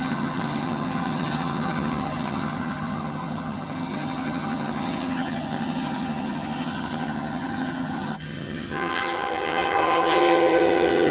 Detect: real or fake fake